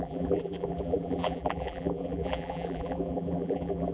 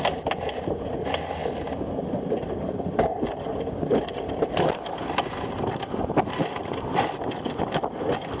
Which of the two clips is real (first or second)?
second